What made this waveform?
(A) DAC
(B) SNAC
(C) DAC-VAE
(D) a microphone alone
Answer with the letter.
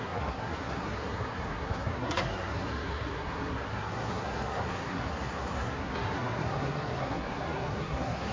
B